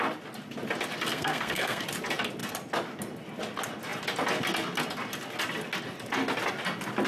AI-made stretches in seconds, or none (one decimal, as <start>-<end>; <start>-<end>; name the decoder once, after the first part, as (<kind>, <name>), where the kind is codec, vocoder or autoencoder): 1.1-1.8 (codec, SNAC)

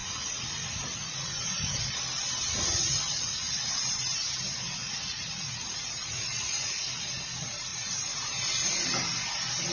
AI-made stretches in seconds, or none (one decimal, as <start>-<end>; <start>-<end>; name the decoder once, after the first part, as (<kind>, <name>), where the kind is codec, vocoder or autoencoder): 0.0-1.8 (vocoder, Vocos); 2.9-3.8; 4.8-6.9; 7.7-8.2

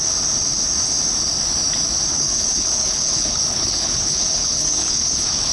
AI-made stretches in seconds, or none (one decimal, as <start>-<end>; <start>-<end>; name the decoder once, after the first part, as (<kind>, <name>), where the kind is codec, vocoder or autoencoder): 2.1-5.5 (codec, HILCodec)

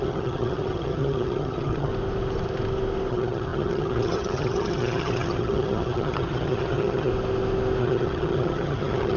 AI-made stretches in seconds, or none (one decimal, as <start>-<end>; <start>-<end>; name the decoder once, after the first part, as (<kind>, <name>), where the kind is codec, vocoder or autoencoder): 0.0-1.9 (vocoder, HiFi-GAN); 3.1-7.1; 7.8-9.2

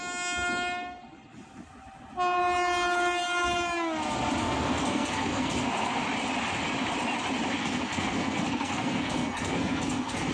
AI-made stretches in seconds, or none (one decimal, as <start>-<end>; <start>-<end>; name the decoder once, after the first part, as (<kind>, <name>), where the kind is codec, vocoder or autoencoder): 4.4-6.0 (codec, SNAC); 7.6-10.3